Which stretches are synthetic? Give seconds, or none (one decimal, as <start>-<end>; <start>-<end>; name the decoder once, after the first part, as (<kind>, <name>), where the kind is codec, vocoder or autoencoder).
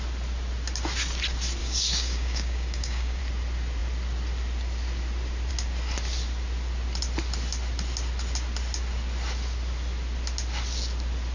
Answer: 1.6-3.2 (codec, DAC)